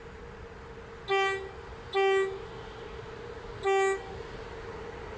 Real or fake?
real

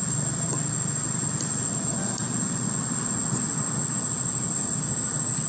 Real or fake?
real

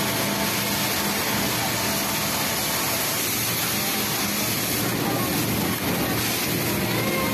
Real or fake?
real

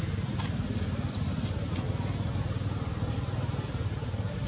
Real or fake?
real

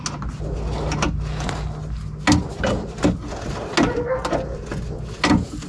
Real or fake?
real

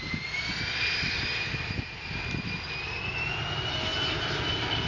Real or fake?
real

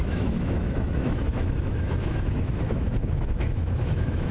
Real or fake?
fake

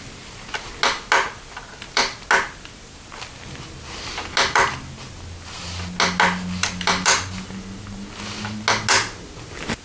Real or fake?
real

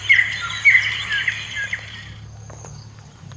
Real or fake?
real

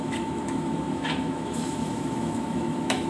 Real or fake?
fake